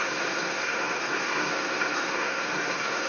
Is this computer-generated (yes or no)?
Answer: yes